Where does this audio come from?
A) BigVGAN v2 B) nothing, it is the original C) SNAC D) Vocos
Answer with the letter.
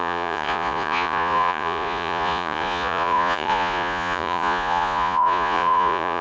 D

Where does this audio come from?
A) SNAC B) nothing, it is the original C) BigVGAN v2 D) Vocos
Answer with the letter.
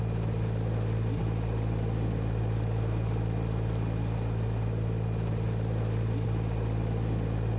B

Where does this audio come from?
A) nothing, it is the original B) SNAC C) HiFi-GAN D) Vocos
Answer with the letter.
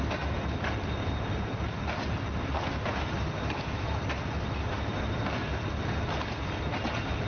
A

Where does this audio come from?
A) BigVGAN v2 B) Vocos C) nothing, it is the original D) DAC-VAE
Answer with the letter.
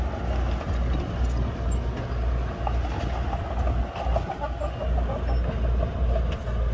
C